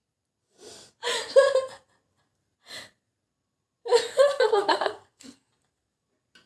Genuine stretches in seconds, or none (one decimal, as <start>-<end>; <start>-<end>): 0.0-4.3; 5.5-6.5